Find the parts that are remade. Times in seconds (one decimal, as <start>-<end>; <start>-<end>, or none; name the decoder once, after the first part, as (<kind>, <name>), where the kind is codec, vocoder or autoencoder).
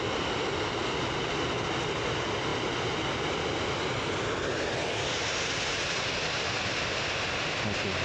none